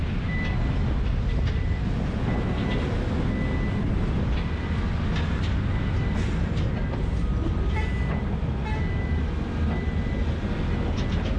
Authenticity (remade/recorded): recorded